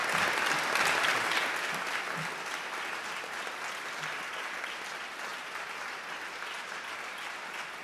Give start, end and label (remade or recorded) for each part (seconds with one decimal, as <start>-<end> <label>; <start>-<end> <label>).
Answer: 0.0-7.8 recorded